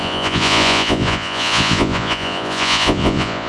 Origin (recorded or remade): remade